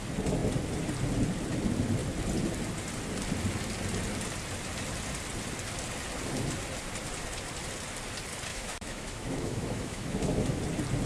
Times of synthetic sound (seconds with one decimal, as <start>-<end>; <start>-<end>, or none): 8.5-10.6

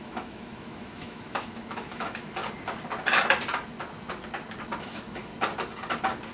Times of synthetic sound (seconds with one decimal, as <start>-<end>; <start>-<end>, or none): 0.0-2.4; 4.8-5.3

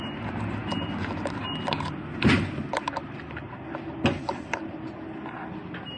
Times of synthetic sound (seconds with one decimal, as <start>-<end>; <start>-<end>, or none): none